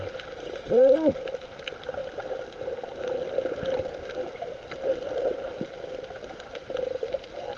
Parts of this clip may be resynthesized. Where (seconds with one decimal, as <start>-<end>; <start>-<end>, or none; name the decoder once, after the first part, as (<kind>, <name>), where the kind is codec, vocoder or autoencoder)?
none